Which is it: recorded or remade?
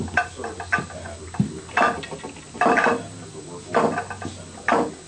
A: recorded